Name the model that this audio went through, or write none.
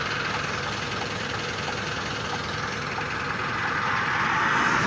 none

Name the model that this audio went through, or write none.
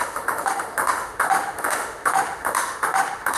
autoencoder, DAC-VAE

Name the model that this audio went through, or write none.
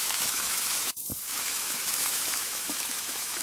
autoencoder, DAC-VAE